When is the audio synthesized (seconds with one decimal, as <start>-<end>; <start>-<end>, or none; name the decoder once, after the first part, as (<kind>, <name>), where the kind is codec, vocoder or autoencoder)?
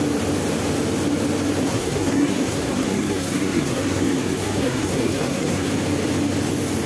1.6-5.7 (codec, SNAC)